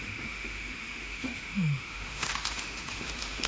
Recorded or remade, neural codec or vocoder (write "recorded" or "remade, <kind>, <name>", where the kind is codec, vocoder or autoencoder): remade, autoencoder, DAC-VAE